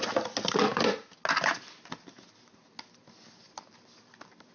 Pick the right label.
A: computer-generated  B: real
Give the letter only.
B